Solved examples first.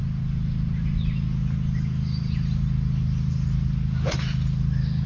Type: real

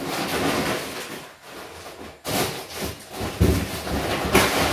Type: real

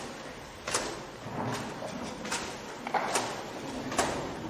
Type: real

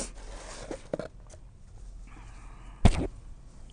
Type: real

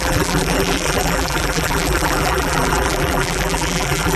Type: fake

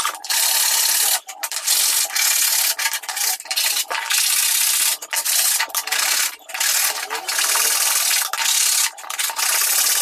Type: real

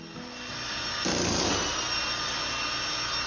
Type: real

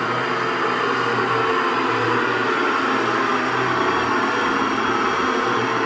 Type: real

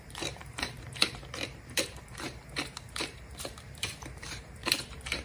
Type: fake